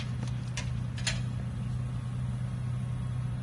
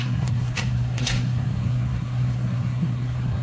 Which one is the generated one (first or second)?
second